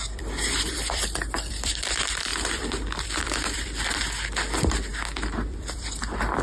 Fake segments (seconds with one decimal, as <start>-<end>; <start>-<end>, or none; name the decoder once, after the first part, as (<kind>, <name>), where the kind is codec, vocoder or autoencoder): 0.0-4.9 (vocoder, BigVGAN v2); 5.5-6.4